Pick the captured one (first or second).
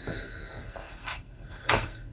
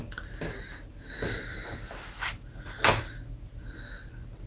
second